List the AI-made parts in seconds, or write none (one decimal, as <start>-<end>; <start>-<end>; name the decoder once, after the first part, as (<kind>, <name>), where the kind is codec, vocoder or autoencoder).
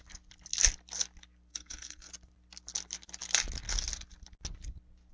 1.5-2.1 (codec, SNAC)